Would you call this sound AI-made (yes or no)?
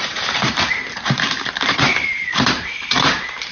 yes